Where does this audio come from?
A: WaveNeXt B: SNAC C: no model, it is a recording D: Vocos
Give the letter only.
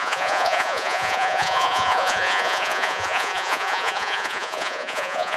D